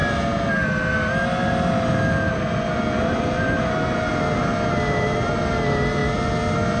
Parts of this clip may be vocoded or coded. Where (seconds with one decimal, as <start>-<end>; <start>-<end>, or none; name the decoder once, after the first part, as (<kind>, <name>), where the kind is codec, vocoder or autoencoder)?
none

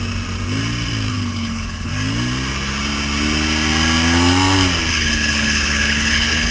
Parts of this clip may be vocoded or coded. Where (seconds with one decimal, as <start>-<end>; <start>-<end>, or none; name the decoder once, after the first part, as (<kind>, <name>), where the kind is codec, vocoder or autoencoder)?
1.1-1.9 (codec, HILCodec); 4.9-6.5

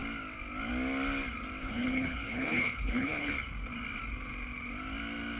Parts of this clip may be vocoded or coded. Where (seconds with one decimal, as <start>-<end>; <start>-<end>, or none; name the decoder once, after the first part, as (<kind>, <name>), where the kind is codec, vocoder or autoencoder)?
1.6-3.3 (codec, HILCodec)

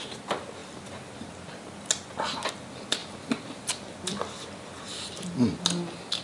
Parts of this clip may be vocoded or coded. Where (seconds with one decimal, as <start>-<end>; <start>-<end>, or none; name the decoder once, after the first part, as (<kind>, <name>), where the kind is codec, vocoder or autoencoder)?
none